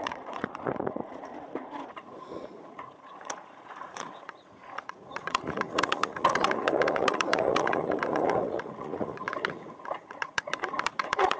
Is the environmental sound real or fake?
fake